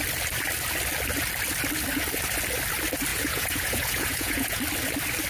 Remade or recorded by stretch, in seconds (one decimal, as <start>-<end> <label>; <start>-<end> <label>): 0.0-3.1 recorded; 3.1-4.6 remade; 4.6-5.3 recorded